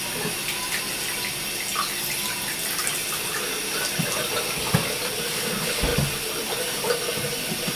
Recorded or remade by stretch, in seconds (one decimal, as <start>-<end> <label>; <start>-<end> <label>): 0.0-7.8 recorded